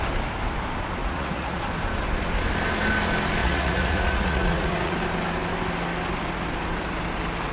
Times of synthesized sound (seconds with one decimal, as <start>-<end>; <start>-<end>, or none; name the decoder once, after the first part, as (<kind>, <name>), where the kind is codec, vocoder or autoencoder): 1.0-1.6 (vocoder, Vocos); 3.4-5.0